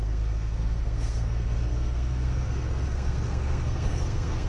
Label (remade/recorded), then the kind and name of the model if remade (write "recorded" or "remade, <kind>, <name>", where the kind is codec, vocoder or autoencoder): remade, codec, SNAC